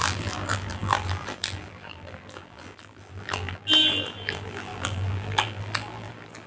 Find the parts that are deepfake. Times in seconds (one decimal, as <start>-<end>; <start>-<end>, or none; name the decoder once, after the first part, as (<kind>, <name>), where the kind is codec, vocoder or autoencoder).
0.0-6.5 (vocoder, BigVGAN v2)